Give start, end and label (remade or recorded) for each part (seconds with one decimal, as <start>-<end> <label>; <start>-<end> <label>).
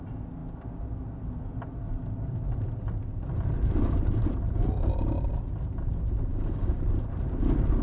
0.0-6.3 recorded; 6.3-6.8 remade; 6.8-7.8 recorded